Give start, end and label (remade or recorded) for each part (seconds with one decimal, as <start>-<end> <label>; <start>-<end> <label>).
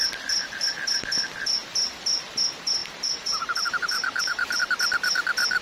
0.0-2.8 recorded; 2.8-4.6 remade; 4.6-5.6 recorded